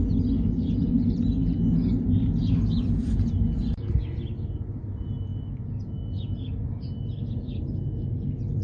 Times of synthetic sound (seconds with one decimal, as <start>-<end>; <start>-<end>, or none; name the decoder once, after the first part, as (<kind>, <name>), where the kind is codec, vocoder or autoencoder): none